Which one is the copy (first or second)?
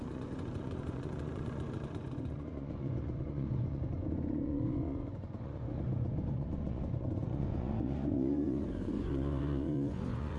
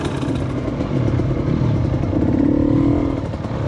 first